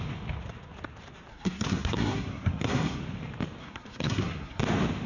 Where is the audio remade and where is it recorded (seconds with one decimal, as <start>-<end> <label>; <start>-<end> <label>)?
0.0-1.3 recorded; 1.3-3.0 remade; 3.0-3.6 recorded; 3.6-4.6 remade; 4.6-5.1 recorded